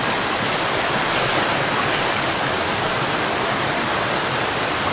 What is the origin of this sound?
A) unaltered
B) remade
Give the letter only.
A